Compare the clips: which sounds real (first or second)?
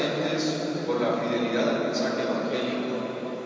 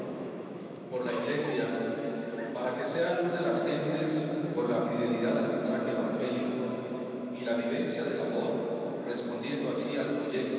first